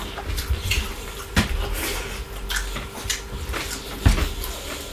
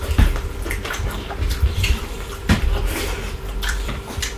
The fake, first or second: second